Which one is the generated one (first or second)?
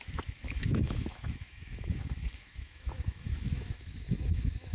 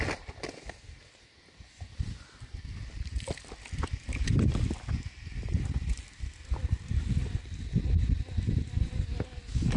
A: first